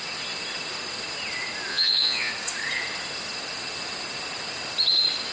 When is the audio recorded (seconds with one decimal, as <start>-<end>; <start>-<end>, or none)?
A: 0.0-1.7; 2.3-5.3